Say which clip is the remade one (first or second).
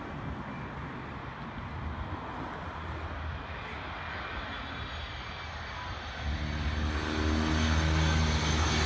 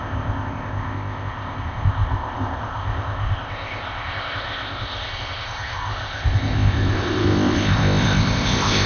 second